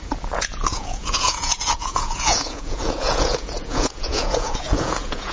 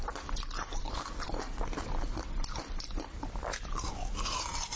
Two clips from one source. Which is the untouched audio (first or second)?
second